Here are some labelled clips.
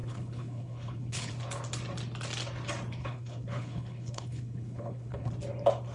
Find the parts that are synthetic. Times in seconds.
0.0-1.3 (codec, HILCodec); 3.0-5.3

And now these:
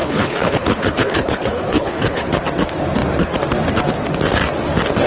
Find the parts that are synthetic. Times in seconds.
0.0-2.3 (codec, HILCodec)

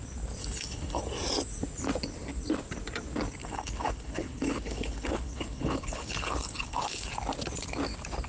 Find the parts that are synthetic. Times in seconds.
0.4-1.0 (codec, HILCodec); 3.4-7.1

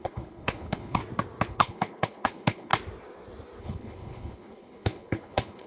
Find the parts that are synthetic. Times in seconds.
0.0-1.0 (codec, HILCodec); 1.5-2.7; 3.6-5.7

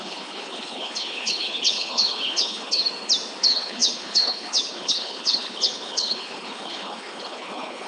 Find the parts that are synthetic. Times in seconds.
0.0-2.8 (codec, HILCodec); 3.4-7.9

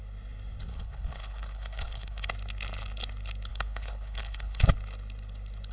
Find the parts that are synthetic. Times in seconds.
0.7-2.3 (codec, HILCodec); 3.5-4.6

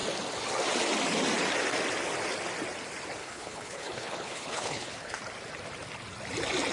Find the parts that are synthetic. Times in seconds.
3.2-5.2 (codec, HILCodec)